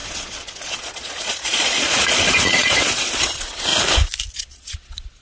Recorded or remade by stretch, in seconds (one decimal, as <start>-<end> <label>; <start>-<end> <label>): 0.0-3.7 remade; 3.7-4.3 recorded; 4.3-5.2 remade